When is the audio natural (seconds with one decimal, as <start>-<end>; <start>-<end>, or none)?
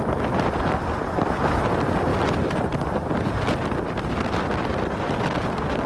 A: 2.1-5.9